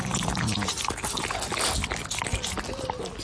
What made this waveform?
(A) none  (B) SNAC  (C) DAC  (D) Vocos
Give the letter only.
A